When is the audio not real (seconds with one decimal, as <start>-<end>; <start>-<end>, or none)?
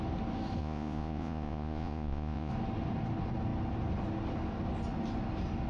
0.6-2.5